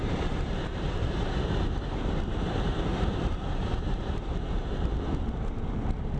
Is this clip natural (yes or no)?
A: no